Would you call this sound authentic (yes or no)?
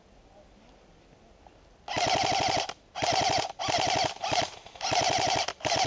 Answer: yes